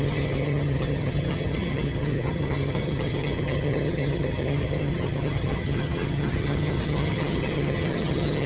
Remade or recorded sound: remade